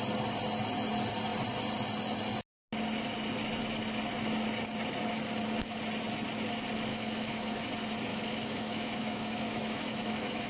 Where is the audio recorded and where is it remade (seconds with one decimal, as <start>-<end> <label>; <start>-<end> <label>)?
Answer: 0.0-6.9 recorded; 6.9-7.7 remade; 7.7-8.1 recorded; 8.1-10.5 remade